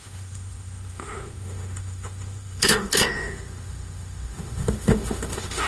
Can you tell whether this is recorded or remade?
remade